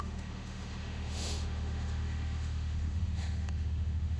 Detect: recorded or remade remade